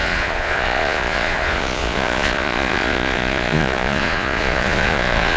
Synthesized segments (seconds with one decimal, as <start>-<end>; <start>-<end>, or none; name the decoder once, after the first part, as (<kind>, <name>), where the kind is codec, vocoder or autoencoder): 0.0-5.4 (vocoder, Vocos)